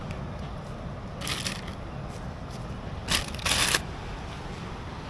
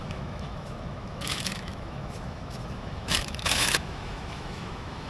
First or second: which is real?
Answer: first